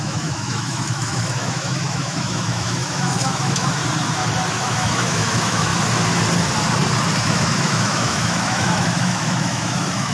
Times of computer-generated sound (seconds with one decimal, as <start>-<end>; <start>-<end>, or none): 0.0-3.8; 4.5-5.7; 7.2-10.1